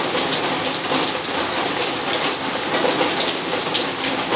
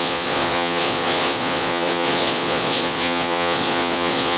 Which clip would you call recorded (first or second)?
first